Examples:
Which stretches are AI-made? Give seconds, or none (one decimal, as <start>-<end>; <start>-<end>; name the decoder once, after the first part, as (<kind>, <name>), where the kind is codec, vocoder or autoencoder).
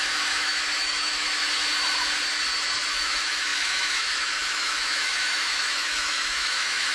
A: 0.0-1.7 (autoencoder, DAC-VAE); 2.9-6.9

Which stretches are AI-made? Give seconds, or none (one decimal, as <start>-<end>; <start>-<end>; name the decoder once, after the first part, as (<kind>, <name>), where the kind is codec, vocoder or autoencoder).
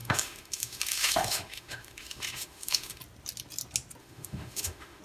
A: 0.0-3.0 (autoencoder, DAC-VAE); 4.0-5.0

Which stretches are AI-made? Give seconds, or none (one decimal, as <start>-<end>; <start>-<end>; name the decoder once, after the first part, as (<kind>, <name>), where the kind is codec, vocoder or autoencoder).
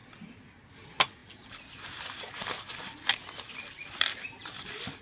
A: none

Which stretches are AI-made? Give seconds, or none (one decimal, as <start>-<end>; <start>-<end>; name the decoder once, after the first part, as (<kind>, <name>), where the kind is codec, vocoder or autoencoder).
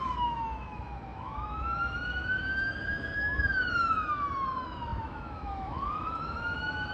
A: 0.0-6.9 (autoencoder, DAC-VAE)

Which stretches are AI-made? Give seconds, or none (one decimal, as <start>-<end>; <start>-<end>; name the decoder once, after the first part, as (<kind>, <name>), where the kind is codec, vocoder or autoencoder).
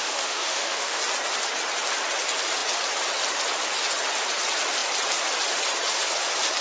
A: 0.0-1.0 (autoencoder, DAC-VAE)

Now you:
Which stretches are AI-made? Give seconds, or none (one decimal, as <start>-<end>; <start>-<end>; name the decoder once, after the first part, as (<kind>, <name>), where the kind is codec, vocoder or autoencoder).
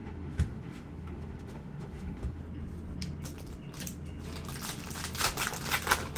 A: 0.0-2.4 (autoencoder, DAC-VAE)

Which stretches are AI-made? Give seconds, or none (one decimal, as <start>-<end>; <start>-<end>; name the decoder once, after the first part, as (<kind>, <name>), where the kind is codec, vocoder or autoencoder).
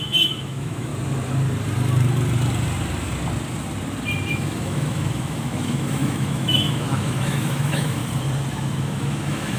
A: 0.0-0.9 (autoencoder, DAC-VAE); 4.3-8.0; 8.5-9.6